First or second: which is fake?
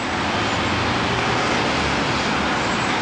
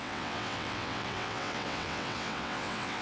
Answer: second